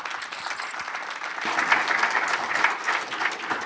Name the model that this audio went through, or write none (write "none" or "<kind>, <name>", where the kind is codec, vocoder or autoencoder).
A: none